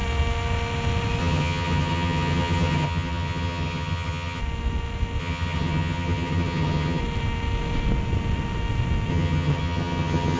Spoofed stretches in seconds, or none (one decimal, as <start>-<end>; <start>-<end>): 1.2-4.4; 5.2-7.0; 9.1-10.4